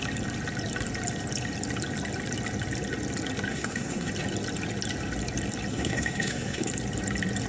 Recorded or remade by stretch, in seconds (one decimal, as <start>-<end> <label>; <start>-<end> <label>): 0.0-3.5 recorded; 3.5-4.1 remade; 4.1-5.7 recorded; 5.7-6.7 remade; 6.7-7.5 recorded